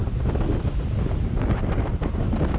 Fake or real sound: fake